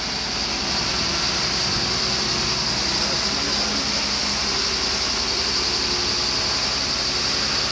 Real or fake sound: real